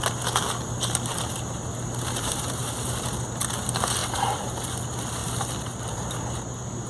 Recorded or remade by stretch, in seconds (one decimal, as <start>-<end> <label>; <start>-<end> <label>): 0.0-1.1 recorded; 1.1-2.7 remade; 2.7-4.0 recorded; 4.0-4.8 remade; 4.8-5.2 recorded; 5.2-6.1 remade; 6.1-6.9 recorded